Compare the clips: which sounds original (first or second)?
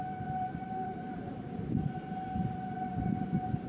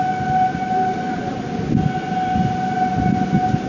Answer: second